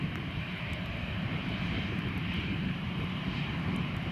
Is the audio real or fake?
fake